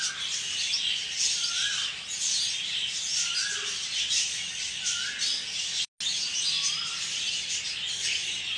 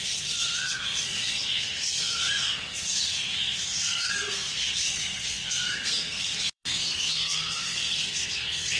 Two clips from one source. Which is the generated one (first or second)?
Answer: second